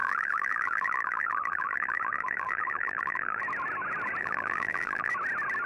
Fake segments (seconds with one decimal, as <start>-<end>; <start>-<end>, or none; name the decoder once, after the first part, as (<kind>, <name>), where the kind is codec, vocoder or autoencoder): 0.0-3.4 (vocoder, BigVGAN v2); 4.2-5.1

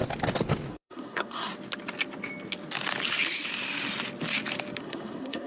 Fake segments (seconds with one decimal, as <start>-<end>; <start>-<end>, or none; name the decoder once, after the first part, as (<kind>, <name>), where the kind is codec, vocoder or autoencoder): 0.7-1.5 (codec, SNAC); 4.8-5.5

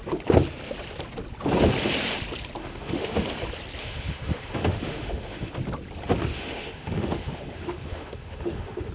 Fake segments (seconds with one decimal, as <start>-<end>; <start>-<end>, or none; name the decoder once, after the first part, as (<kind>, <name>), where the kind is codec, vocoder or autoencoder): 2.6-3.1 (autoencoder, DAC-VAE); 3.8-5.5; 6.3-8.9

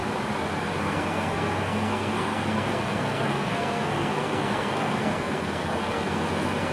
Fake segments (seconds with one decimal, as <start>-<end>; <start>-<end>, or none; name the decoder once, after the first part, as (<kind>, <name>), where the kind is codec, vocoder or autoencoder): 0.6-6.7 (codec, SNAC)